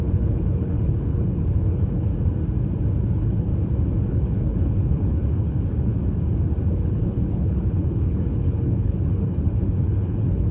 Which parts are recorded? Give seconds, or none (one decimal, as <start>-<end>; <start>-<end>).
2.1-3.0; 3.5-4.1; 5.9-6.7